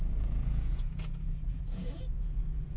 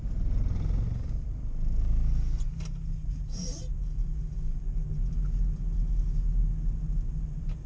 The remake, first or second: first